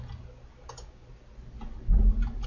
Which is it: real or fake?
real